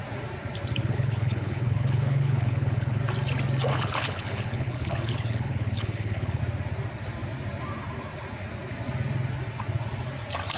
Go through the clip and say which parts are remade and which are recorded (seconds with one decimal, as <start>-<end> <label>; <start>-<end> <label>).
0.0-0.8 recorded; 0.8-3.0 remade; 3.0-3.7 recorded; 3.7-6.4 remade; 6.4-10.6 recorded